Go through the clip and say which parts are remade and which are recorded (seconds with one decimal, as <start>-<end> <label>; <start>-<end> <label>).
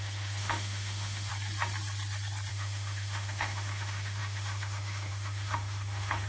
0.0-1.3 remade; 1.3-2.5 recorded; 2.5-6.3 remade